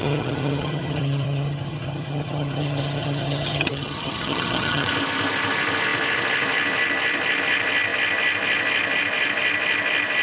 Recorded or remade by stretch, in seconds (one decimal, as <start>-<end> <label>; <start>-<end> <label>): 0.0-4.9 remade; 4.9-10.2 recorded